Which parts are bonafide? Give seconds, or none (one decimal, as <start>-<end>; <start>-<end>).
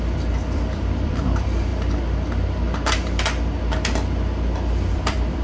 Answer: 1.7-4.9